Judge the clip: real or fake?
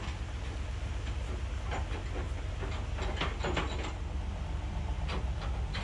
real